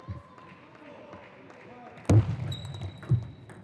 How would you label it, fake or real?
real